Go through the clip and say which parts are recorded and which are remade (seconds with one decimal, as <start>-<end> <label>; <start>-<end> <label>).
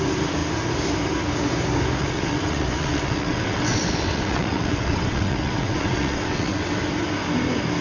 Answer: 0.0-2.0 recorded; 2.0-6.7 remade; 6.7-7.8 recorded